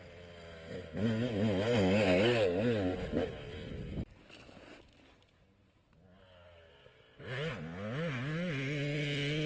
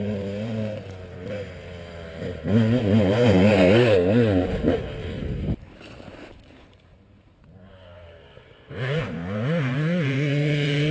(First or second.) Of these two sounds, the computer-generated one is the second